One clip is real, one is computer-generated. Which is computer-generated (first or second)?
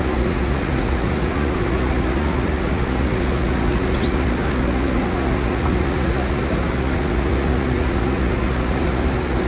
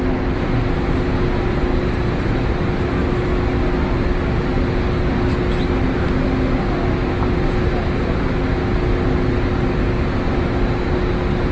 first